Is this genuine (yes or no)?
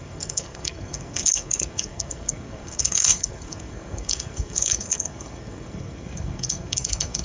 no